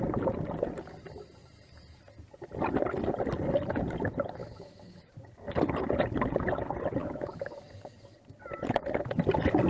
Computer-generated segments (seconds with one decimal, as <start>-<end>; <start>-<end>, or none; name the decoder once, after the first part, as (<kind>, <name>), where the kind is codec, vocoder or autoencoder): 4.4-5.0 (autoencoder, DAC-VAE); 7.0-7.7